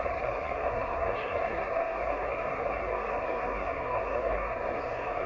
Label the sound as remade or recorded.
remade